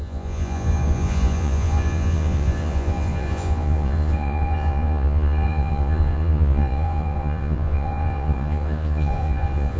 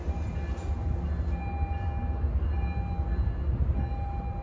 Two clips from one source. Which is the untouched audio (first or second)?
second